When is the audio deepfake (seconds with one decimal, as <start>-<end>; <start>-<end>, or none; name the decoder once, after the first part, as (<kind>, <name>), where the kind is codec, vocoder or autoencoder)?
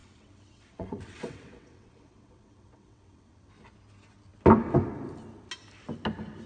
0.0-3.5 (vocoder, WaveNeXt)